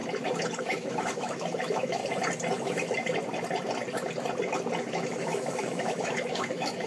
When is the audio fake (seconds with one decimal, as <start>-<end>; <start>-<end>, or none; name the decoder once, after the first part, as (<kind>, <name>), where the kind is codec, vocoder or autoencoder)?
0.6-2.0 (autoencoder, DAC-VAE); 4.8-6.9